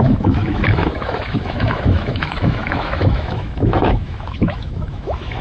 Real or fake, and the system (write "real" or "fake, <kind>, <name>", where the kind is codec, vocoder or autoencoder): fake, autoencoder, DAC-VAE